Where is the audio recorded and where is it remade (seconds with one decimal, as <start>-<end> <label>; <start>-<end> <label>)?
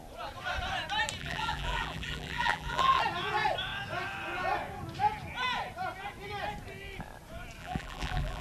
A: 0.0-1.2 recorded; 1.2-3.0 remade; 3.0-7.6 recorded; 7.6-8.4 remade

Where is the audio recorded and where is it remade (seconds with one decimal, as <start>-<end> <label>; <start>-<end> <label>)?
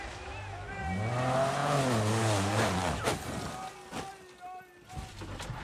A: 0.0-5.6 recorded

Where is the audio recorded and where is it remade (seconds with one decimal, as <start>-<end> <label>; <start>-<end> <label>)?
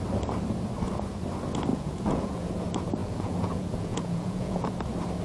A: 0.0-1.7 recorded; 1.7-2.5 remade; 2.5-3.0 recorded; 3.0-4.7 remade; 4.7-5.2 recorded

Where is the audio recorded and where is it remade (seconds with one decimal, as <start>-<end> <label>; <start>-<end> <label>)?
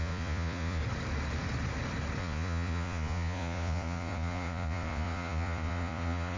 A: 0.0-0.8 remade; 0.8-2.2 recorded; 2.2-6.4 remade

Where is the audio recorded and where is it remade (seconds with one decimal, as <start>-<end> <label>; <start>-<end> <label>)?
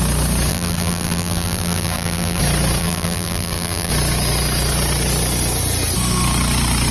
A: 0.0-0.5 recorded; 0.5-2.4 remade; 2.4-2.8 recorded; 2.8-3.9 remade; 3.9-6.9 recorded